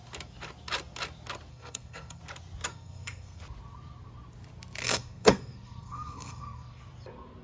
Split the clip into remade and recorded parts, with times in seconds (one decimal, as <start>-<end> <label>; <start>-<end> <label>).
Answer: 0.0-1.5 recorded; 1.5-2.2 remade; 2.2-2.7 recorded; 2.7-3.4 remade; 3.4-4.8 recorded; 4.8-6.8 remade; 6.8-7.4 recorded